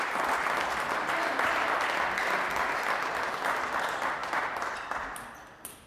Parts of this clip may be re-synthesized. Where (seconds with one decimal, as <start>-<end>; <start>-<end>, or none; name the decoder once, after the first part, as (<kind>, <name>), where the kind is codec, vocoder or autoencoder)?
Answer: 0.0-5.9 (vocoder, BigVGAN v2)